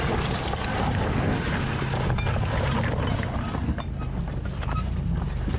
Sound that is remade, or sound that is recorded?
recorded